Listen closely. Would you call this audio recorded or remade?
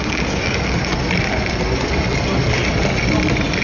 recorded